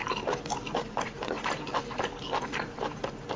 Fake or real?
real